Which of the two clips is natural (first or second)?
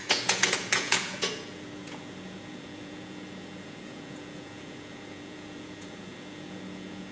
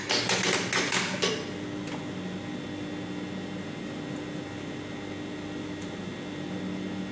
second